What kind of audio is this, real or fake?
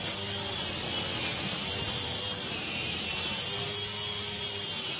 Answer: real